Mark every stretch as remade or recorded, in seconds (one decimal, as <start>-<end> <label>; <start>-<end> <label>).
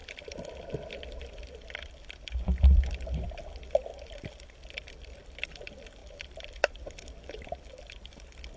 0.0-1.5 remade; 1.5-3.9 recorded; 3.9-5.2 remade; 5.2-6.0 recorded; 6.0-7.7 remade; 7.7-8.6 recorded